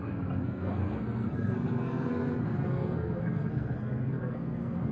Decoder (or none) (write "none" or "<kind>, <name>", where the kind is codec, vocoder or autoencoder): codec, SNAC